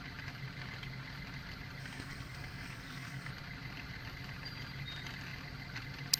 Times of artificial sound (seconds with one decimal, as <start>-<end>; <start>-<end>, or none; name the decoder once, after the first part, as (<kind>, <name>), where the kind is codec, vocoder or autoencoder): 1.8-3.3 (codec, SNAC)

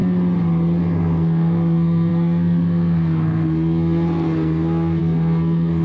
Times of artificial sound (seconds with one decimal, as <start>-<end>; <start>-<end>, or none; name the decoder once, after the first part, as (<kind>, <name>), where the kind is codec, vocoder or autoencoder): 0.8-5.8 (codec, SNAC)

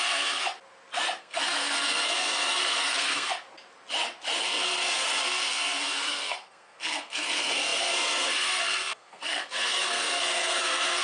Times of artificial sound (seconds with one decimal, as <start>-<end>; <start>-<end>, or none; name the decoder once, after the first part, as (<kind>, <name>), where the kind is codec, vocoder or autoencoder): 0.0-0.4 (codec, SNAC); 1.2-3.3; 4.4-11.0

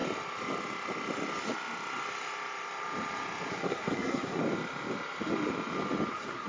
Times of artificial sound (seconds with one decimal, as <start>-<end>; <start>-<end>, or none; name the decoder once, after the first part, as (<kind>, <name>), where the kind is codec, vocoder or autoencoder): 3.5-4.4 (codec, SNAC); 6.1-6.5

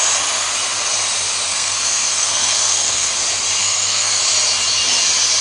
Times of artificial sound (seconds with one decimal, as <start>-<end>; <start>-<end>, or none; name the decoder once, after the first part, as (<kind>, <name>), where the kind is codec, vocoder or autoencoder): 1.5-3.1 (codec, SNAC); 3.6-4.2

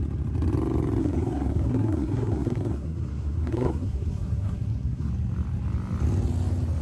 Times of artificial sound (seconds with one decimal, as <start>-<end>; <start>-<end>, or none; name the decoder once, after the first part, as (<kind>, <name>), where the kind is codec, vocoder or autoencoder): 1.0-5.1 (codec, SNAC)